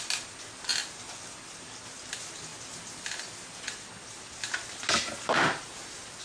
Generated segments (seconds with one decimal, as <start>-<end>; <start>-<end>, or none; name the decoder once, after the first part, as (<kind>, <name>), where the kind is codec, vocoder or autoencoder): none